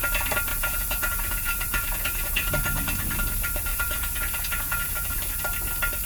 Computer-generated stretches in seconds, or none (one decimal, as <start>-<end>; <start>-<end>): 0.5-2.5; 3.7-5.2